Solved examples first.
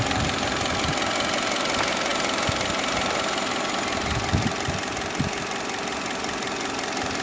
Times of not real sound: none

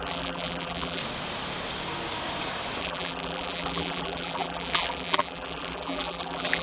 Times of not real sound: 0.0-1.0 (vocoder, BigVGAN v2); 2.8-6.6

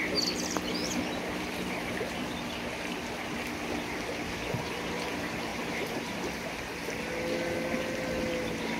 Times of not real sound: 5.5-6.6 (vocoder, BigVGAN v2)

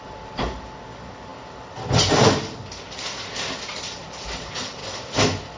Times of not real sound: 0.0-5.6 (vocoder, BigVGAN v2)

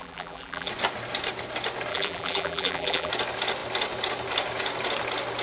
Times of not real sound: 0.0-0.7 (vocoder, BigVGAN v2); 1.9-3.1

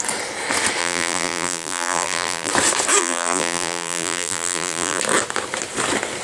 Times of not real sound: 0.8-2.5 (vocoder, BigVGAN v2); 3.0-5.0

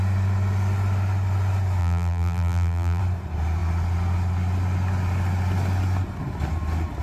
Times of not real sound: 1.8-3.0 (vocoder, BigVGAN v2)

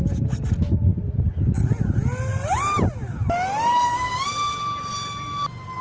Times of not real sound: none